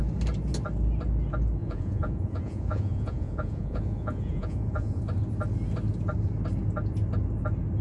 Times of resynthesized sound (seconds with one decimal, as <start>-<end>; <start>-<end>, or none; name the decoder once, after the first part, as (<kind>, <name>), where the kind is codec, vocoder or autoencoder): 1.6-5.0 (vocoder, Vocos)